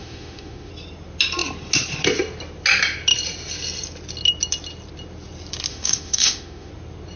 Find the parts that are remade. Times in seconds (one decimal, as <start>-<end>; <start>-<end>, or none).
0.0-0.7; 5.7-6.7